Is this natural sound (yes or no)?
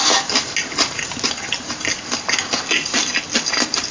yes